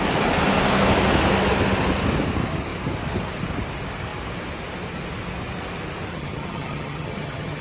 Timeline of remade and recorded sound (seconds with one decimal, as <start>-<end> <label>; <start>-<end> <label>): 0.0-6.1 recorded; 6.1-7.6 remade